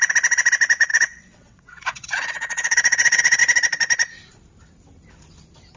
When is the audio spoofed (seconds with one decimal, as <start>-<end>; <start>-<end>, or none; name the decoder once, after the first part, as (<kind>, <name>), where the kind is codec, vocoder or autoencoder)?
0.9-3.4 (vocoder, WaveNeXt)